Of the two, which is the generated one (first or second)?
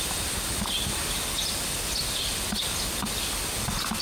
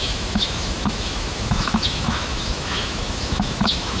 second